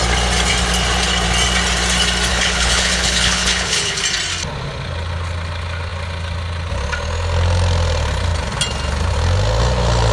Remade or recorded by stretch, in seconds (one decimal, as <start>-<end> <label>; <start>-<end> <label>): 0.0-2.3 recorded; 2.3-4.0 remade; 4.0-10.1 recorded